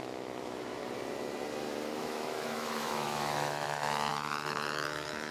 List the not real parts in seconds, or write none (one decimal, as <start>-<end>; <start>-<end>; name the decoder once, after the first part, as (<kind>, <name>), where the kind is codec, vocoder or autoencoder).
0.0-0.8 (autoencoder, DAC-VAE); 2.0-5.3